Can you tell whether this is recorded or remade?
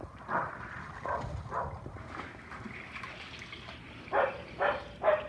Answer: recorded